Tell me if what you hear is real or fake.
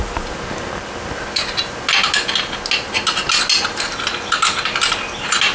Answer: real